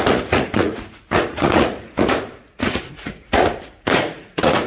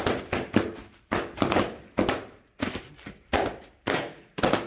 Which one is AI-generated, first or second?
first